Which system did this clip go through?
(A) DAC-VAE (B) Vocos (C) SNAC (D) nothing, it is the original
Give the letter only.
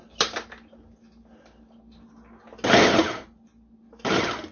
D